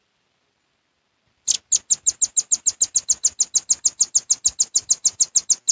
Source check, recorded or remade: recorded